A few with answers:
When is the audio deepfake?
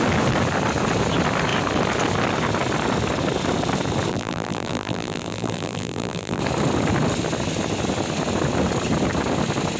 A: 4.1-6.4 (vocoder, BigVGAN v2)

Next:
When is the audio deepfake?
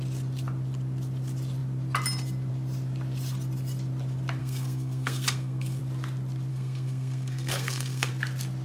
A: 4.4-5.8 (codec, SNAC); 6.5-8.1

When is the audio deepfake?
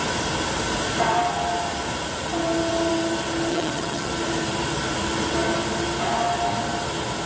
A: 3.5-4.1 (vocoder, HiFi-GAN)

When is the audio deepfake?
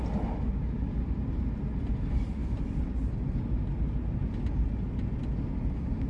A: none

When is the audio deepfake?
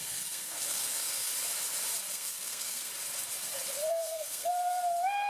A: 0.0-1.3 (codec, SNAC); 2.1-2.9; 3.9-4.5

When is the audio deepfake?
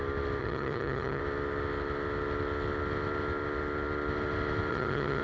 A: 0.4-1.2 (vocoder, HiFi-GAN); 4.7-5.2